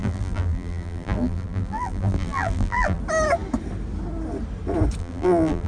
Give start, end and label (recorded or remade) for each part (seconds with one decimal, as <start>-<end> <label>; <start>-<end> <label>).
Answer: 0.0-3.0 remade; 3.0-5.0 recorded; 5.0-5.7 remade